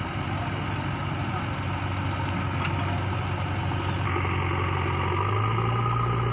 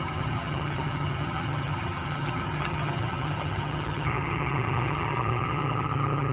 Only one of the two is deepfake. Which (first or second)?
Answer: second